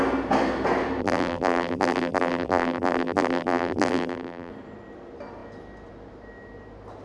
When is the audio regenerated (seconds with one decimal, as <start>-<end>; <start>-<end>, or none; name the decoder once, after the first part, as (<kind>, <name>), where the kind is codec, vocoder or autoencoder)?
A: 1.0-4.5 (vocoder, BigVGAN v2)